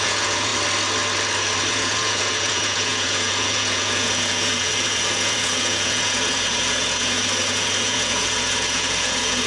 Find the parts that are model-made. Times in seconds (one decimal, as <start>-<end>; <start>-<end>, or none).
0.0-0.5; 1.7-9.5